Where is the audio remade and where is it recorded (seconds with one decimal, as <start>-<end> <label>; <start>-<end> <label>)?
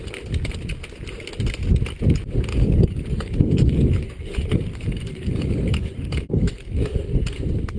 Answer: 0.0-2.5 recorded; 2.5-7.1 remade; 7.1-7.8 recorded